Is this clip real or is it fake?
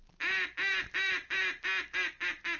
real